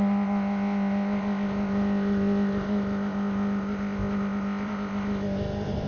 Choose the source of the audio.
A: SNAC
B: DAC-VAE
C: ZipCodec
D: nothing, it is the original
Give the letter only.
C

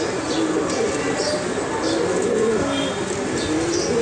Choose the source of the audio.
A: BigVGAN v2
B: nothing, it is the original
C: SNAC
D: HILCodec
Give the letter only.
B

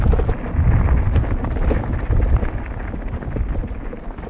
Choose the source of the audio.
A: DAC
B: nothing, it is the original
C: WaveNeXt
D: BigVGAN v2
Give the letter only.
B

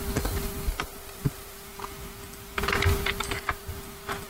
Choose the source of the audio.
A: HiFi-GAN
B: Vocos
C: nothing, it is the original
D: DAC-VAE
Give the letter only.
C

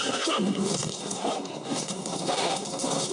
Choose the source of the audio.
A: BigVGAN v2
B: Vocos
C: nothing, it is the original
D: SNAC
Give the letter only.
D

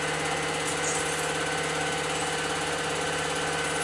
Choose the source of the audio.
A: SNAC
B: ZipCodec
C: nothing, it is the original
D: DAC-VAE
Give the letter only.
C